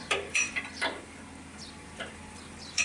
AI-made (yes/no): yes